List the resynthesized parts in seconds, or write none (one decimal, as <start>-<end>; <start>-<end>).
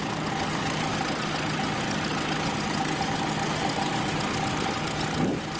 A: none